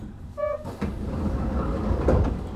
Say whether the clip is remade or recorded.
remade